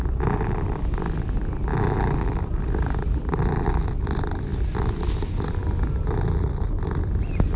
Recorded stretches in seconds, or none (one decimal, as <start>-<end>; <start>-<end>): 0.0-7.6